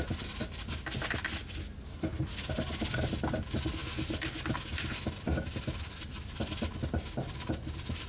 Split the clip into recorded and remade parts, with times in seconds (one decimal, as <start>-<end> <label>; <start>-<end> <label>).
0.0-8.1 recorded